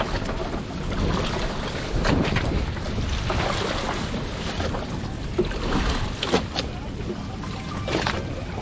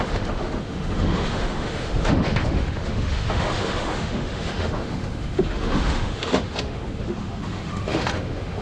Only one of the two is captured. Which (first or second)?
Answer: first